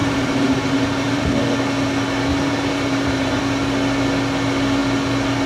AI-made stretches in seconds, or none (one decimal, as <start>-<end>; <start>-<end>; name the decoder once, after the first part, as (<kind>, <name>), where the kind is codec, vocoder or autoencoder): 0.0-1.3 (vocoder, BigVGAN v2); 2.3-3.4